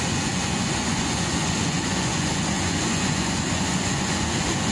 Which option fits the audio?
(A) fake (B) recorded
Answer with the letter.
A